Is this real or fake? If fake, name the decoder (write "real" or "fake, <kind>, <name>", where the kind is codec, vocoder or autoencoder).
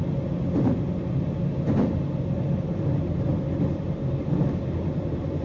real